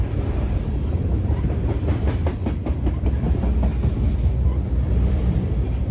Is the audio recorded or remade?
remade